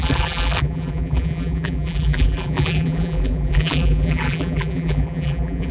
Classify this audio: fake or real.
fake